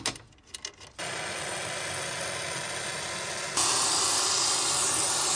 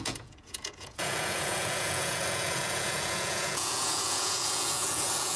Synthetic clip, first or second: second